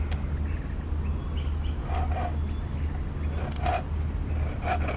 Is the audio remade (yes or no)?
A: no